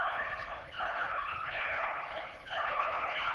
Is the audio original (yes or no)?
no